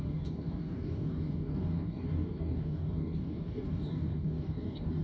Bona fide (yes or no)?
no